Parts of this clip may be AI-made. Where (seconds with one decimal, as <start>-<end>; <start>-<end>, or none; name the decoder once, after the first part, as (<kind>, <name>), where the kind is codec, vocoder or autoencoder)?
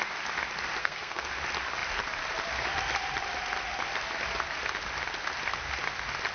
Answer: 0.8-1.3 (codec, SNAC)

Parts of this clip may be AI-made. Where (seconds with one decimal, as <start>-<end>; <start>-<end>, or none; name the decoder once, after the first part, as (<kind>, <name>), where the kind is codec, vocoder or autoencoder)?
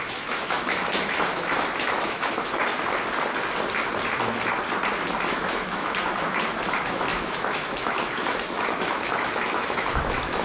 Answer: 0.0-2.7 (autoencoder, DAC-VAE); 5.3-10.4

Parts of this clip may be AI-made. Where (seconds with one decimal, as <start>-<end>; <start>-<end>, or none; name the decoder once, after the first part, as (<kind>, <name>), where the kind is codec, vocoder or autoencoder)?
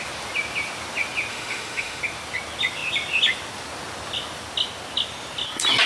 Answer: 1.3-2.0 (autoencoder, DAC-VAE)